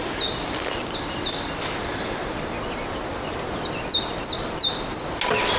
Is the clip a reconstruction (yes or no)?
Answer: no